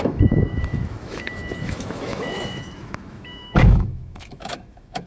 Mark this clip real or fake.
fake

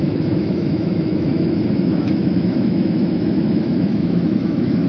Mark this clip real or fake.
fake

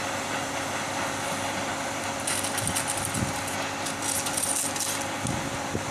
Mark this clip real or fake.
real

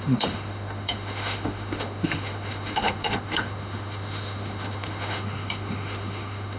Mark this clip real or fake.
fake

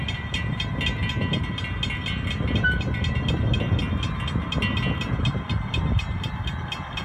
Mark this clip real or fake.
real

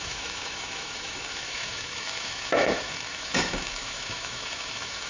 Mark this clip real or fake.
fake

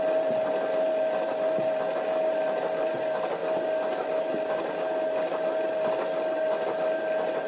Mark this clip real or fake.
real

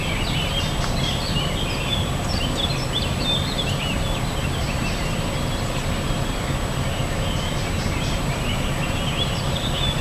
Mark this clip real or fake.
real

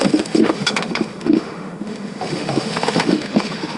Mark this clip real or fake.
fake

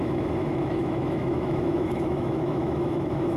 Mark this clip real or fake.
fake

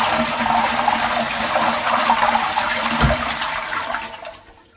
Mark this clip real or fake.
real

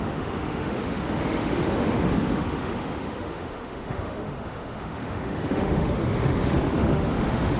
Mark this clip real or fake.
fake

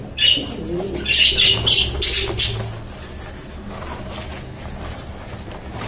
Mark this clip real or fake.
real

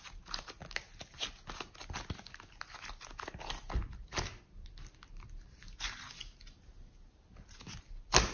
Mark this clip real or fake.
real